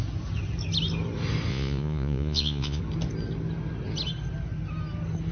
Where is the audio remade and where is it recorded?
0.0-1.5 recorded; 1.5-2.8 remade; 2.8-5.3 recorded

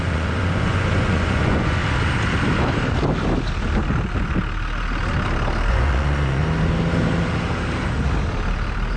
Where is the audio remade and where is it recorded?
0.0-1.8 remade; 1.8-5.7 recorded; 5.7-6.4 remade; 6.4-9.0 recorded

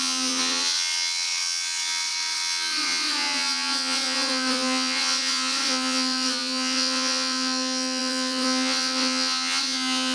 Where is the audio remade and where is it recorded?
0.0-10.1 remade

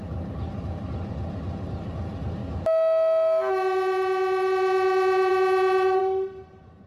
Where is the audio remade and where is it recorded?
0.0-6.9 recorded

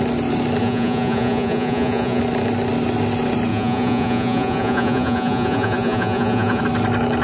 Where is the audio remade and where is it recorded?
0.0-0.6 recorded; 0.6-2.2 remade; 2.2-3.5 recorded; 3.5-6.6 remade; 6.6-7.2 recorded

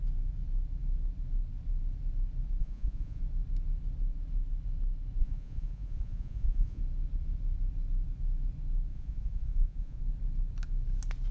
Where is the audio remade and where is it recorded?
0.0-2.6 recorded; 2.6-3.2 remade; 3.2-5.2 recorded; 5.2-6.8 remade; 6.8-8.9 recorded; 8.9-10.0 remade; 10.0-11.3 recorded

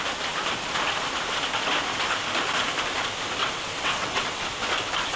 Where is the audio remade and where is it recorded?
0.0-3.4 recorded; 3.4-4.5 remade; 4.5-5.2 recorded